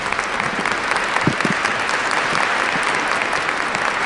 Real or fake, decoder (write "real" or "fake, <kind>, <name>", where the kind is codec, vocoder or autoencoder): real